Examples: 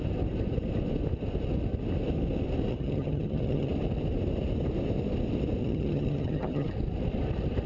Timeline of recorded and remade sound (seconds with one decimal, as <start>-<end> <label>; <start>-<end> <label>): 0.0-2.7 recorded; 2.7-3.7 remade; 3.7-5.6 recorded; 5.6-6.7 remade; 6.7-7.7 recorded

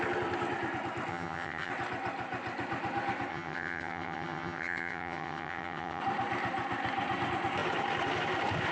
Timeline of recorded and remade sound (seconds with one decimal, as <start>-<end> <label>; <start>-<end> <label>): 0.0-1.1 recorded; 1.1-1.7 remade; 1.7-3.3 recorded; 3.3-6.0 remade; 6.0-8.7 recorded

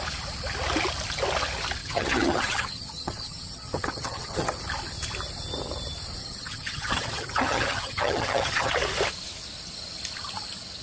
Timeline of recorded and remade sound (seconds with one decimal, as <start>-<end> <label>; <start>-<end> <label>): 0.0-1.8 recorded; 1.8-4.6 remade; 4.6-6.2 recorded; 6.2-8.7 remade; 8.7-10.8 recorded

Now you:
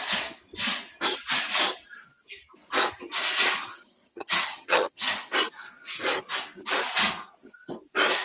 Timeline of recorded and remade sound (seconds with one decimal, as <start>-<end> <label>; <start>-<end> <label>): 0.0-3.7 recorded; 3.7-5.1 remade; 5.1-8.2 recorded